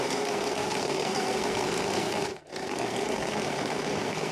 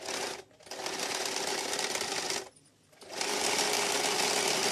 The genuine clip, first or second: second